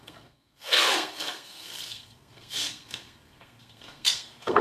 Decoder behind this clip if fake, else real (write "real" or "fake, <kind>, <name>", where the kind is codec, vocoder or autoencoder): fake, codec, SNAC